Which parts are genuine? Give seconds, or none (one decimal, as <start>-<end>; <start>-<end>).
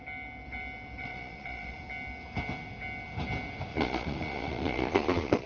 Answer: 0.0-1.0; 1.8-3.7